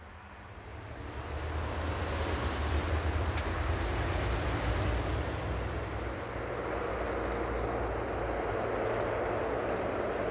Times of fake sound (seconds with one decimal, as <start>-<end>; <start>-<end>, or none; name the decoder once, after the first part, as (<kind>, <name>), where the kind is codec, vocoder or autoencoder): none